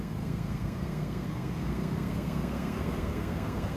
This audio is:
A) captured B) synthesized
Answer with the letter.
B